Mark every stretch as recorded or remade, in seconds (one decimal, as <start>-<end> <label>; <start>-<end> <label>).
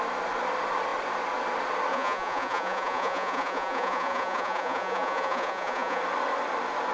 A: 0.0-1.9 recorded; 1.9-6.0 remade; 6.0-6.9 recorded